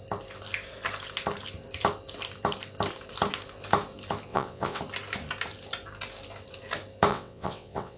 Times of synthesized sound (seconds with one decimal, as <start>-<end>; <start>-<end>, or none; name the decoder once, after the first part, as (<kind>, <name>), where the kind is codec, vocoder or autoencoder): 4.3-4.8 (vocoder, WaveNeXt); 7.1-8.0